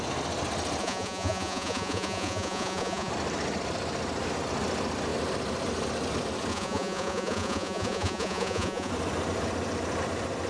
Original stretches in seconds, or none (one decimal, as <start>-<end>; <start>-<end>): 0.0-0.8; 3.1-6.5; 8.9-10.5